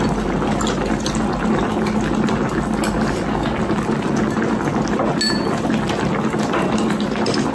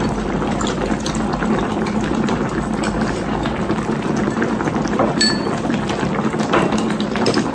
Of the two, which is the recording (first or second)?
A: first